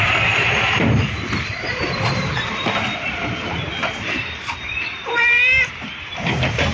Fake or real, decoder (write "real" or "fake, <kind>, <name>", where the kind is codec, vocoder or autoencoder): fake, vocoder, BigVGAN v2